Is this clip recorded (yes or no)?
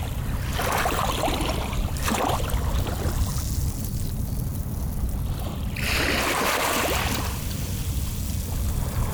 yes